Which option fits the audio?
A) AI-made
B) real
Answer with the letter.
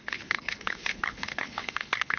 A